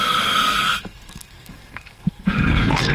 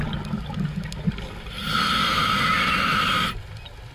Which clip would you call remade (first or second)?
first